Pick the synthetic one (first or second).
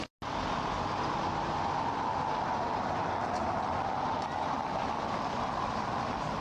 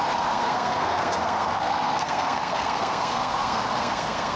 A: second